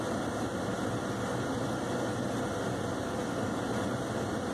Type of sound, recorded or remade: recorded